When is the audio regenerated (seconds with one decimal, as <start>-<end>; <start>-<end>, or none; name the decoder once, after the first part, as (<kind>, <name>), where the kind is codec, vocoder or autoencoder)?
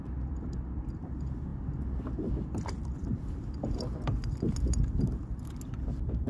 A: 0.0-1.5 (vocoder, BigVGAN v2); 2.3-4.2